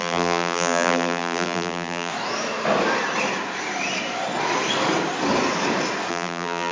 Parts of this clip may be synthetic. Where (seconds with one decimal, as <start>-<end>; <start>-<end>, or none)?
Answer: 0.0-2.1; 6.1-6.7